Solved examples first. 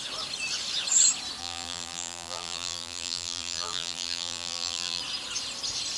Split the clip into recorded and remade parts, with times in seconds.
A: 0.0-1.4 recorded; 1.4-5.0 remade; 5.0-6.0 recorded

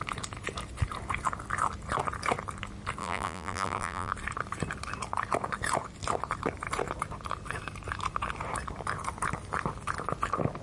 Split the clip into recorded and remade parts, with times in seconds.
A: 0.0-3.0 recorded; 3.0-4.1 remade; 4.1-10.6 recorded

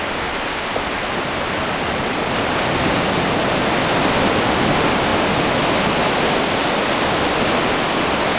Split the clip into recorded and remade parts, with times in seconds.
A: 0.0-8.4 recorded

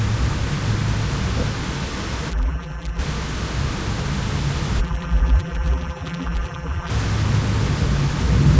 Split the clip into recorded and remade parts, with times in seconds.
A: 0.0-2.3 recorded; 2.3-3.0 remade; 3.0-4.8 recorded; 4.8-6.9 remade; 6.9-8.6 recorded